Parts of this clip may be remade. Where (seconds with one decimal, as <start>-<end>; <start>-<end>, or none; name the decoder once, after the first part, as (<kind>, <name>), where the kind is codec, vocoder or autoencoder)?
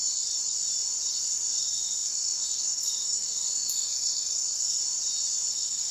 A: 1.1-4.8 (codec, SNAC); 5.5-5.9